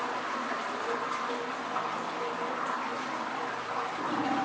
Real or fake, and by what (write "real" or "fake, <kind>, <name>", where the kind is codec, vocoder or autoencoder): fake, vocoder, BigVGAN v2